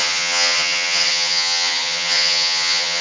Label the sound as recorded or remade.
remade